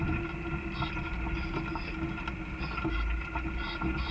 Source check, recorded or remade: recorded